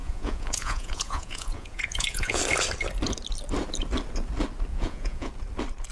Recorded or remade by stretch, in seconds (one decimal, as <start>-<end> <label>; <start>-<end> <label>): 0.0-2.4 remade; 2.4-4.7 recorded; 4.7-5.3 remade; 5.3-5.9 recorded